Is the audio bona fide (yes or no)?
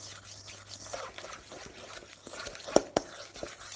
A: yes